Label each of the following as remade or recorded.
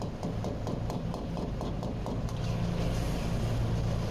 recorded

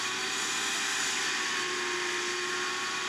recorded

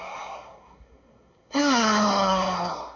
remade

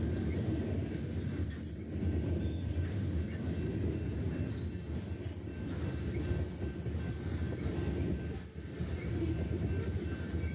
recorded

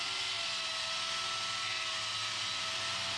recorded